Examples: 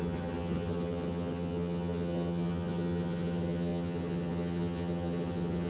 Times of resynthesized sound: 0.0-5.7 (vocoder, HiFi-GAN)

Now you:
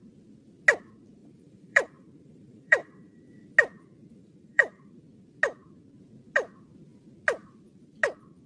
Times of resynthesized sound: 1.2-3.2 (vocoder, BigVGAN v2); 4.2-4.9